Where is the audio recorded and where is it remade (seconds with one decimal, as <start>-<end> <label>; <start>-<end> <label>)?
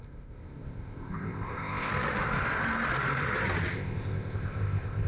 0.0-1.9 remade; 1.9-3.7 recorded; 3.7-5.1 remade